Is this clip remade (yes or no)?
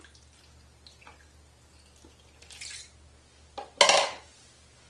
no